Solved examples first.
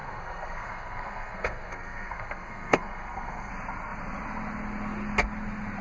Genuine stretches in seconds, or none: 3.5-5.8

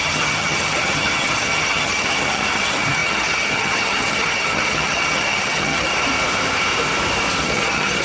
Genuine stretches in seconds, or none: 5.9-7.4